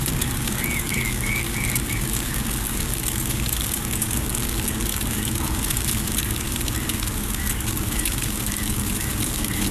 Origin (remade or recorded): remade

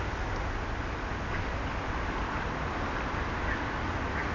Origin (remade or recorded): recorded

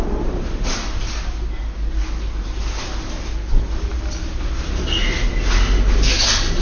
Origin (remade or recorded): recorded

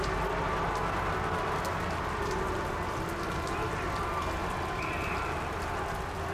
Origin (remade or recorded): recorded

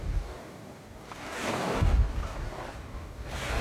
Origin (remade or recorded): remade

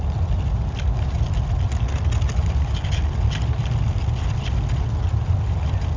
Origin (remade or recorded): recorded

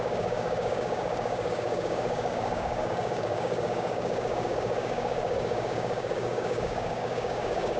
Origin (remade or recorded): remade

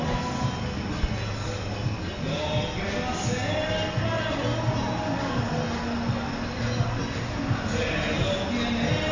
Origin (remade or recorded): recorded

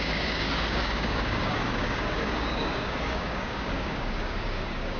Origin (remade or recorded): remade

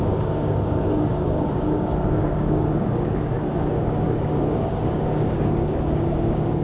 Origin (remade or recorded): remade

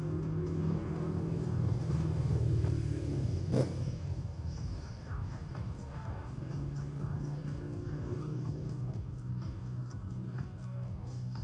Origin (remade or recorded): remade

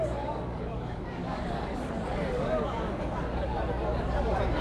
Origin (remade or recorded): remade